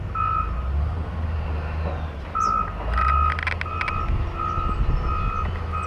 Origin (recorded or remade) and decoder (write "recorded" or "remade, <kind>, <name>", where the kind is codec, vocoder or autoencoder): recorded